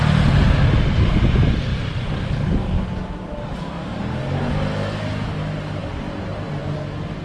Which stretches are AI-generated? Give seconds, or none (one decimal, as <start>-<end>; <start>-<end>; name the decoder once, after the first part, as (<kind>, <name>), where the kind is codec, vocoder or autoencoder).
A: none